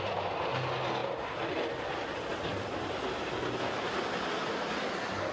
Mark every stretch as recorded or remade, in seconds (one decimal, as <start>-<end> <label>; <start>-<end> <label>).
0.0-5.3 recorded